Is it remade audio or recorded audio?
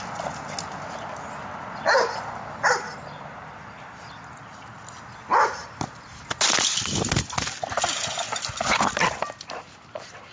recorded